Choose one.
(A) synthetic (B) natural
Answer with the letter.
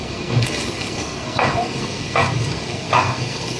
A